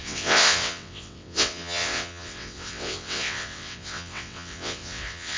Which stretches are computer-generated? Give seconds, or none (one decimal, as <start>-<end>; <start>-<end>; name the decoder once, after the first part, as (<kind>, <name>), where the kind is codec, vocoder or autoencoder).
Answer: 0.0-5.4 (vocoder, WaveNeXt)